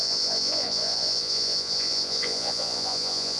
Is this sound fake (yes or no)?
yes